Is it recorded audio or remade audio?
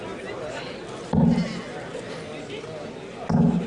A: recorded